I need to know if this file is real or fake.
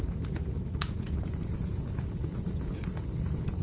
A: fake